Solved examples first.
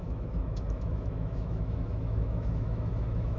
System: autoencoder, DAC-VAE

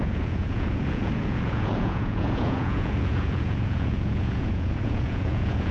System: vocoder, Vocos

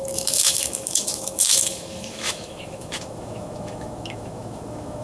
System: autoencoder, DAC-VAE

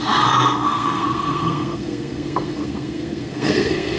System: codec, SNAC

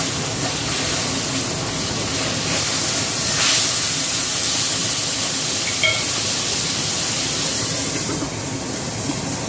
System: none